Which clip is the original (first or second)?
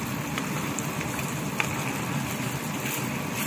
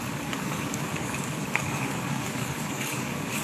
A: first